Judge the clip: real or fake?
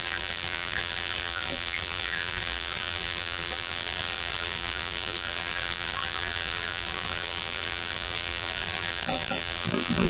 fake